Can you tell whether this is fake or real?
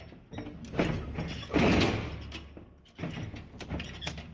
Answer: real